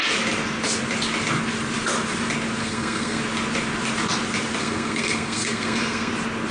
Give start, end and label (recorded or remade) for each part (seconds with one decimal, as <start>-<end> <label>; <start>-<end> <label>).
0.0-2.6 recorded; 2.6-3.2 remade; 3.2-4.6 recorded; 4.6-6.1 remade; 6.1-6.5 recorded